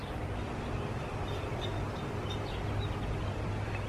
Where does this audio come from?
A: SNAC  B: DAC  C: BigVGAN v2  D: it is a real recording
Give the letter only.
D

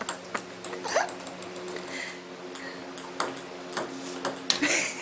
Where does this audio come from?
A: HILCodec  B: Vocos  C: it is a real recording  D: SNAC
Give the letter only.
C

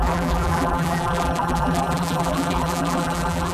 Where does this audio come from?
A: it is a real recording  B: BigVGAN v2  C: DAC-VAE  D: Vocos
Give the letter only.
B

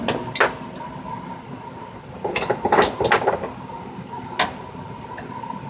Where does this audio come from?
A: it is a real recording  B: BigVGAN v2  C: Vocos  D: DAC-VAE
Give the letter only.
A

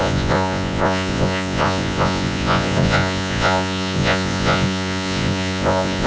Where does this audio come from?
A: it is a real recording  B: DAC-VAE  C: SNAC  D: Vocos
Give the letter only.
D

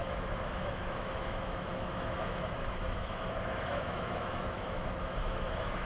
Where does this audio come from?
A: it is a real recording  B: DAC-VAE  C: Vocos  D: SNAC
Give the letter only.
B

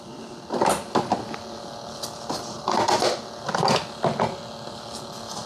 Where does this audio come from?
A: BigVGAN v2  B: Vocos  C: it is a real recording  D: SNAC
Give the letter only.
C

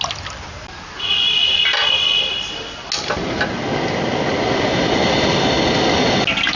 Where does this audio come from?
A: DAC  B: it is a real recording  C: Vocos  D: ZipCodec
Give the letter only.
B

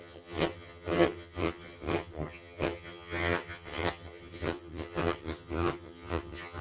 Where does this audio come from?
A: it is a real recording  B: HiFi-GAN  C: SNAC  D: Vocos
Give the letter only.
B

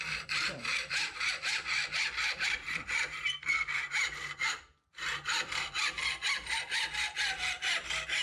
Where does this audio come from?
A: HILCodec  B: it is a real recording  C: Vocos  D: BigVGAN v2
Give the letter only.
D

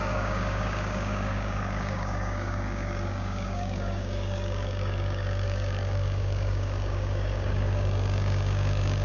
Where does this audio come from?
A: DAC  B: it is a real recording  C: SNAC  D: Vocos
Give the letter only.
A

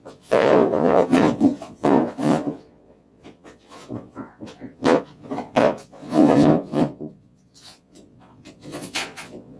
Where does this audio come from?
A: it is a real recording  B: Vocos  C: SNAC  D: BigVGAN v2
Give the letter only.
B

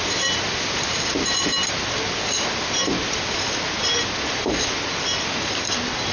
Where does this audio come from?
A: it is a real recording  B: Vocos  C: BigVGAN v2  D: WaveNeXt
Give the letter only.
A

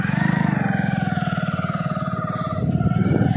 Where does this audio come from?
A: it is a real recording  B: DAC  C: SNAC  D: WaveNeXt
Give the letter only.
A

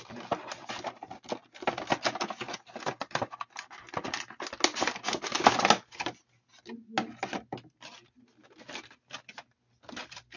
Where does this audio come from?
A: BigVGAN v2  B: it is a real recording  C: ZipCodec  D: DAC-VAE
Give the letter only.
B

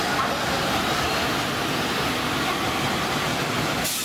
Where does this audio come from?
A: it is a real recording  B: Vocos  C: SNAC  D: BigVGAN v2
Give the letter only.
A